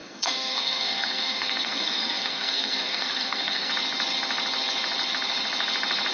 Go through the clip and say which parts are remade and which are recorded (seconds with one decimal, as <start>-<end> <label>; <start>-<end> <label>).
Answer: 0.0-3.7 remade; 3.7-6.1 recorded